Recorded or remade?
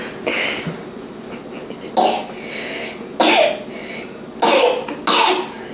recorded